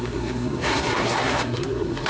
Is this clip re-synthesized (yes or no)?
yes